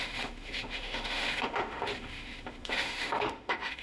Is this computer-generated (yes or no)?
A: yes